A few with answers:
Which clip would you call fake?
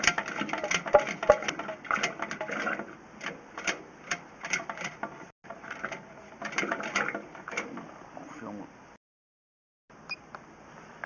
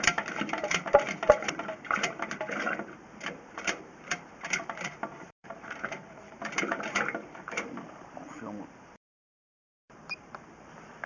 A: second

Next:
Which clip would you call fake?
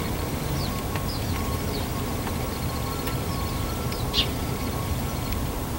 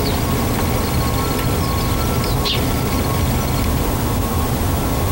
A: first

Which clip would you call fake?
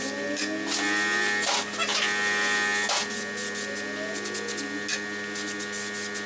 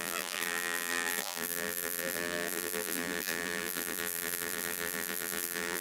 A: second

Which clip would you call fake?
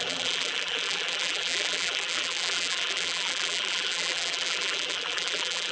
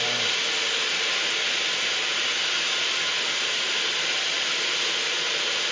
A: first